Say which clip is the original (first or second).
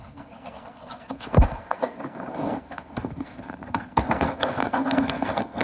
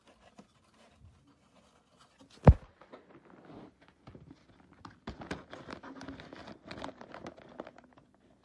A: second